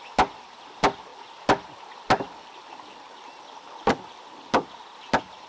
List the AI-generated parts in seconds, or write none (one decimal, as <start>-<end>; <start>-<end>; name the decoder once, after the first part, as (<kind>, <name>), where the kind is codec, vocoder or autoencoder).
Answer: none